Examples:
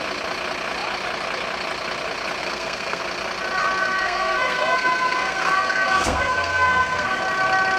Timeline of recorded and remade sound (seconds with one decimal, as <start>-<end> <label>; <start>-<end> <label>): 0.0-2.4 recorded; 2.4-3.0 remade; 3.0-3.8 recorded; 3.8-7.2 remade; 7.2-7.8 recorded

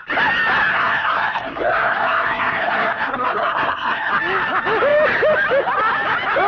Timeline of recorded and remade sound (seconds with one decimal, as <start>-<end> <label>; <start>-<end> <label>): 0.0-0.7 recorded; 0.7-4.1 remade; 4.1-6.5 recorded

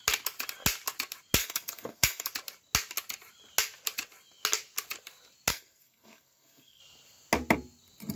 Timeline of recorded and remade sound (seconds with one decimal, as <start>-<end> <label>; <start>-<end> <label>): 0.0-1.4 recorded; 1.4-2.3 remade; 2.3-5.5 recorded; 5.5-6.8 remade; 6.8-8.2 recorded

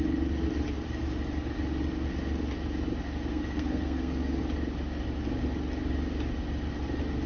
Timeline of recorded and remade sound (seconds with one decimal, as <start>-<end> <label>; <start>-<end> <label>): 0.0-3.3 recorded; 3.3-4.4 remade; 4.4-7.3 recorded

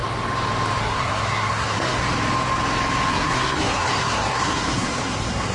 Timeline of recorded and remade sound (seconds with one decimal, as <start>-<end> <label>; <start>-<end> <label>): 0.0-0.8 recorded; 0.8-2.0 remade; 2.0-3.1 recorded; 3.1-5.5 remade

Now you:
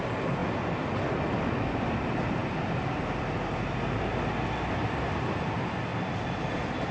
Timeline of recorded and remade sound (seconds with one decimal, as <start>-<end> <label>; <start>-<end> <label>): 0.0-6.9 recorded

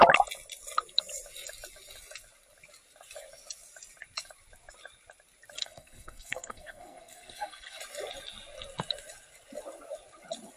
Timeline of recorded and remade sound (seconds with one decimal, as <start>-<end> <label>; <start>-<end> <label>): 0.0-5.6 recorded; 5.6-7.8 remade; 7.8-10.6 recorded